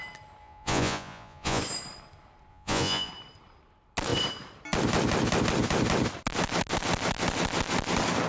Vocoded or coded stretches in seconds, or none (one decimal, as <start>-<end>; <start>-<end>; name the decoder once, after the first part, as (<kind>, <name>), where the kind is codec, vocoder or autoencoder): 0.4-1.6 (vocoder, Vocos); 2.5-3.1